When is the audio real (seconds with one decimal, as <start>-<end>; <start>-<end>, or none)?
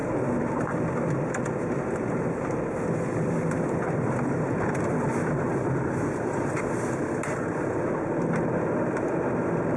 0.0-9.8